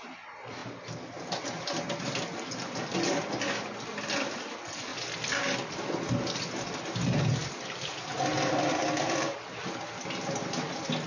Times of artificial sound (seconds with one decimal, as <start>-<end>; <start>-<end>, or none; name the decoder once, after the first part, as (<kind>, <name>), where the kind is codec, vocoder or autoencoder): none